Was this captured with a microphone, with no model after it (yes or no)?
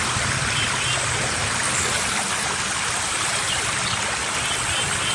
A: yes